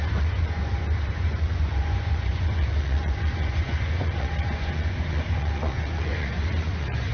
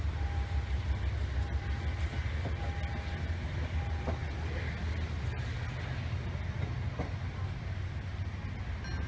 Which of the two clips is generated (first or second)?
first